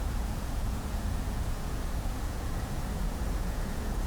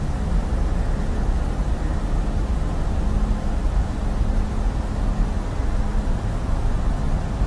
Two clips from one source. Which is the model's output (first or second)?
first